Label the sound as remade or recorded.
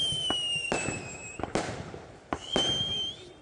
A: recorded